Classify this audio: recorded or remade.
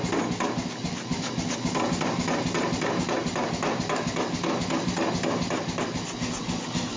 recorded